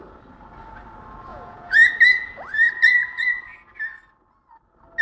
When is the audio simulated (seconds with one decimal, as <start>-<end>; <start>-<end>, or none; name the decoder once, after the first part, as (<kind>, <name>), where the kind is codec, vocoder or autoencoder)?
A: 1.3-1.9 (vocoder, Vocos); 2.5-3.4